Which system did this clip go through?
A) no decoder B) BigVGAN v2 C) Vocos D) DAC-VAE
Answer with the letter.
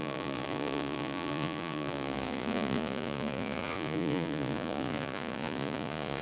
C